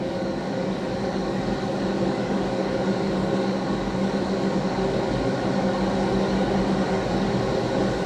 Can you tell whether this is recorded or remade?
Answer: remade